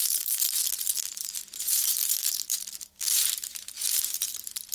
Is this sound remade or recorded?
remade